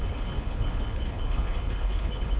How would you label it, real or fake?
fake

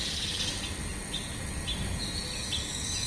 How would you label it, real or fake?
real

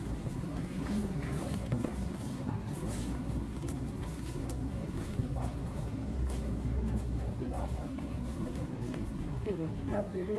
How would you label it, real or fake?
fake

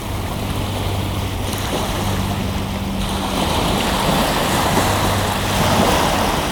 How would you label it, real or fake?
real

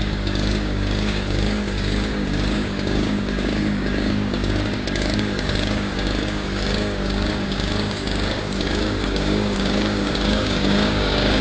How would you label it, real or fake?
fake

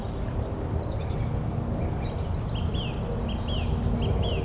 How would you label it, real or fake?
real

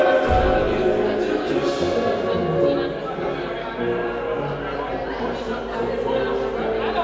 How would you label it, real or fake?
real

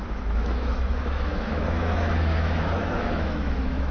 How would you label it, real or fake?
fake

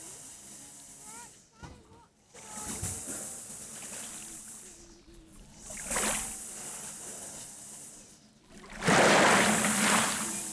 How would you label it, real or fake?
real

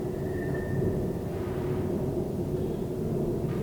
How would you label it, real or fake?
real